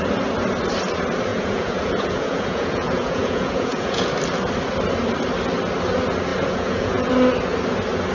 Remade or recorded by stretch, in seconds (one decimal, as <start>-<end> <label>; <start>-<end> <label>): 0.0-1.3 recorded; 1.3-4.1 remade; 4.1-6.3 recorded; 6.3-7.1 remade; 7.1-8.1 recorded